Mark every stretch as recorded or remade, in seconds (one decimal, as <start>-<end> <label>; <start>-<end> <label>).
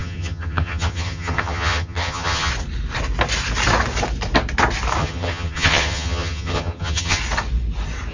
0.0-2.5 remade; 2.5-5.0 recorded; 5.0-7.2 remade; 7.2-8.1 recorded